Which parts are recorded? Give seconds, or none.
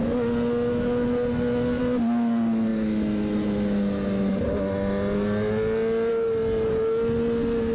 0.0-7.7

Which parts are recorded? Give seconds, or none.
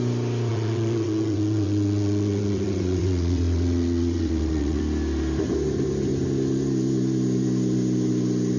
0.0-0.5; 4.8-8.6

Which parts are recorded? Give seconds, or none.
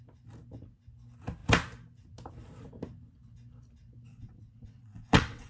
0.0-4.1